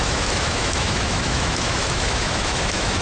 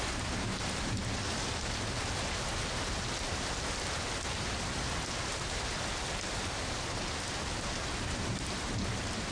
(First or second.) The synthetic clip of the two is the first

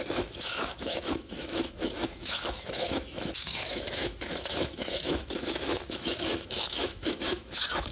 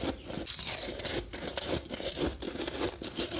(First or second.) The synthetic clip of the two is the first